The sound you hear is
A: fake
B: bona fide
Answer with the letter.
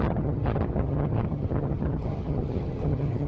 A